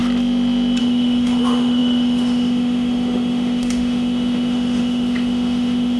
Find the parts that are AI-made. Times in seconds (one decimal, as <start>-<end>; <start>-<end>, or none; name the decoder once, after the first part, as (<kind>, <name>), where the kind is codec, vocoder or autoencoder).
0.8-6.0 (autoencoder, DAC-VAE)